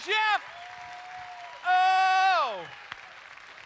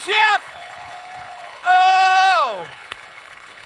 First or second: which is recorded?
first